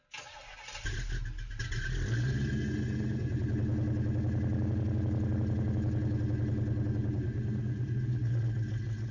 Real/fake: real